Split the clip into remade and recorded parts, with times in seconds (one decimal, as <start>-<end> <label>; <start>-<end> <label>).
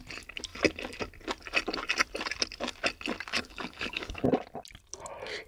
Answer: 0.0-3.3 recorded; 3.3-4.2 remade; 4.2-5.5 recorded